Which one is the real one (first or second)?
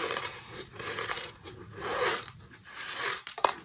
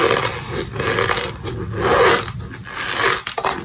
second